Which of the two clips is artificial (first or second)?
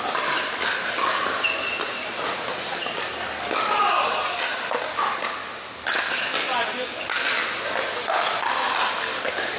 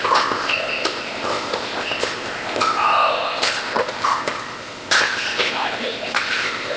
second